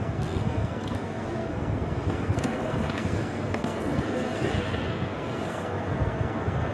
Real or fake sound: fake